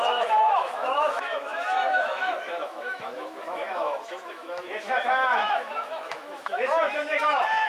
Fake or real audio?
fake